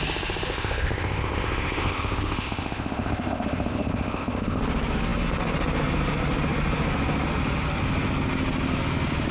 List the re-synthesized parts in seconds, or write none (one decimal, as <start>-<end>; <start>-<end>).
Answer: 0.5-4.6

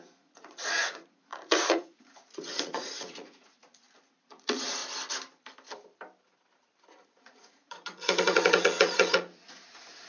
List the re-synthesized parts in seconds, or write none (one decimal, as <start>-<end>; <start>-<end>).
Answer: 0.0-4.8; 7.0-10.1

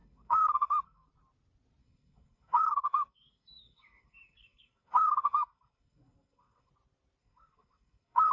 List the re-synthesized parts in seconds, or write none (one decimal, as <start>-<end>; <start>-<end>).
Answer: 0.0-1.1; 1.8-6.7; 7.2-8.3

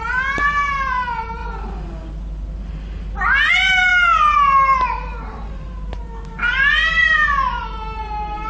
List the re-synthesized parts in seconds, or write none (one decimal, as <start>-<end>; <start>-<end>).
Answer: 0.0-1.4; 3.5-3.9; 5.3-8.5

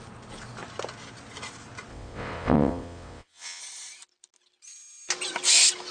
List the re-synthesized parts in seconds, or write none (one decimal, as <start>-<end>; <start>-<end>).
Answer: 1.9-3.6

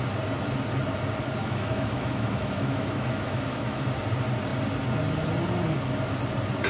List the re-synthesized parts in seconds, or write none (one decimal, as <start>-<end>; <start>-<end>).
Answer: 1.4-3.8

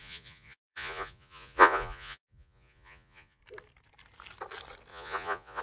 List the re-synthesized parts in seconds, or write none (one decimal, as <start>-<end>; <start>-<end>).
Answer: 0.0-3.4; 4.9-5.6